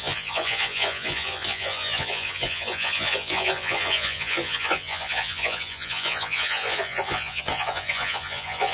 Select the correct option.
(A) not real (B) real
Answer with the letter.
A